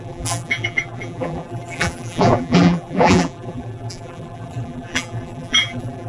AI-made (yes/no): yes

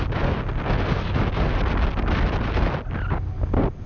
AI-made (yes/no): no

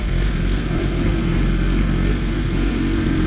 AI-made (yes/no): yes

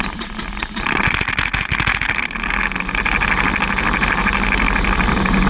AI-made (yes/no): yes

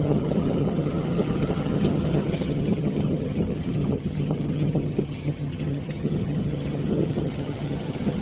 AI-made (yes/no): yes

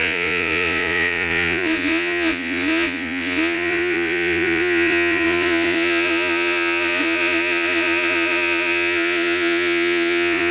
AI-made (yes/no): yes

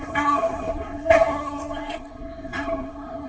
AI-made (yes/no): yes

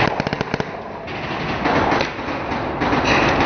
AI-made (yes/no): no